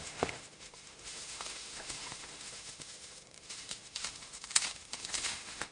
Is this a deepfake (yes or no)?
yes